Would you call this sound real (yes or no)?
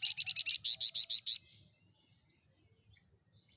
yes